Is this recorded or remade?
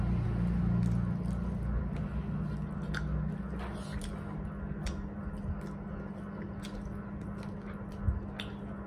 recorded